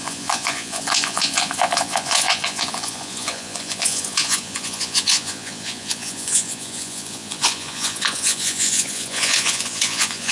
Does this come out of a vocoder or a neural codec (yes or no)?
yes